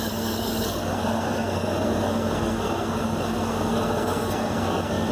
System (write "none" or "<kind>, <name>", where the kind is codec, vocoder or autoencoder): codec, SNAC